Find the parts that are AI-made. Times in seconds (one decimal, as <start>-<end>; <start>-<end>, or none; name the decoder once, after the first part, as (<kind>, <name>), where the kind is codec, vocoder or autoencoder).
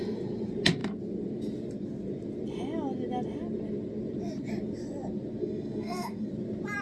5.4-6.3 (codec, SNAC)